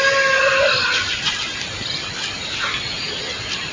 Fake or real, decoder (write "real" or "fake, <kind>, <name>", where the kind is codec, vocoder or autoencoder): real